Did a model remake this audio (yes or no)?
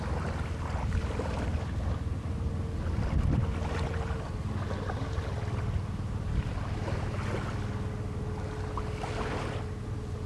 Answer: no